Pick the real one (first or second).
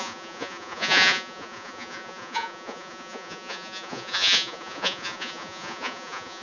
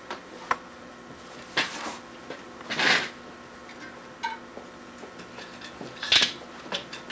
second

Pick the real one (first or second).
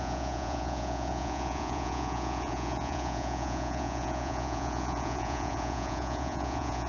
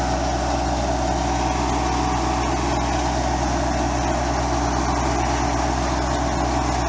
second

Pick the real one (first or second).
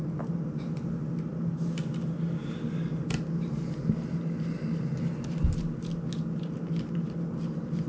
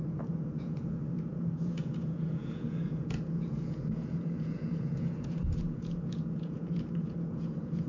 first